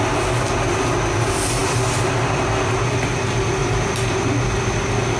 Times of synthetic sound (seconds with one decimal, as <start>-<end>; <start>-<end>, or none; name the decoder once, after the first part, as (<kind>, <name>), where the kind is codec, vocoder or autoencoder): 1.6-2.4 (vocoder, BigVGAN v2); 3.6-4.3